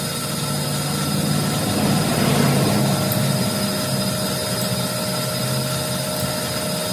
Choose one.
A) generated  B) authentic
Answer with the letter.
B